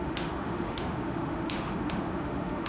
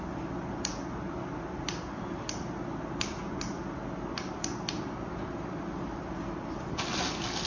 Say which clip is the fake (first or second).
first